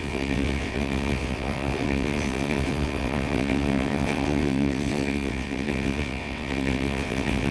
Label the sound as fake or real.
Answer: fake